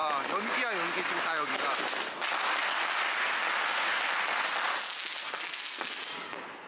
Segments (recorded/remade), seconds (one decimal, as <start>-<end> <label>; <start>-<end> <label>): 0.0-5.2 recorded; 5.2-5.9 remade; 5.9-6.7 recorded